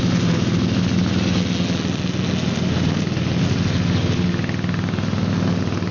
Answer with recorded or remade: recorded